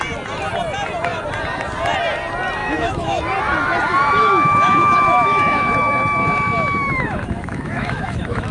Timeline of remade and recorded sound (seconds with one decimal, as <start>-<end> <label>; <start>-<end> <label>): 0.0-2.6 recorded; 2.6-3.2 remade; 3.2-4.2 recorded; 4.2-8.5 remade